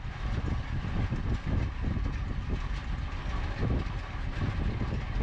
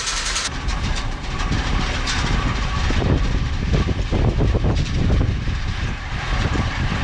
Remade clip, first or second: second